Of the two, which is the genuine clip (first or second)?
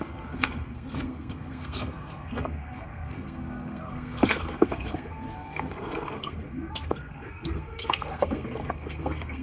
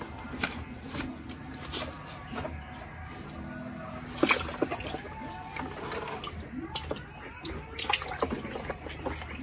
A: second